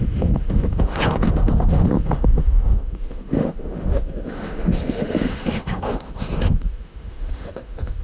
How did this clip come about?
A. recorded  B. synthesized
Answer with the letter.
B